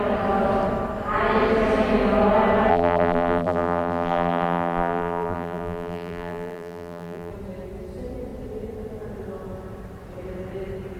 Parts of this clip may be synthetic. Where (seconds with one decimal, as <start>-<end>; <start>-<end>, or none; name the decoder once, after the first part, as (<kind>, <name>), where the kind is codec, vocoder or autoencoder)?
2.7-7.3 (vocoder, BigVGAN v2)